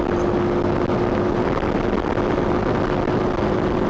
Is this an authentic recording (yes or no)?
yes